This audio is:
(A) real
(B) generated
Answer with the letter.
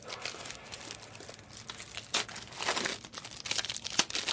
A